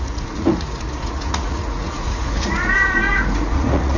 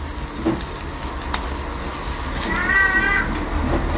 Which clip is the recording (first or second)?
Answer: second